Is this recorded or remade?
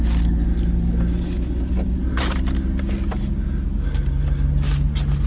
recorded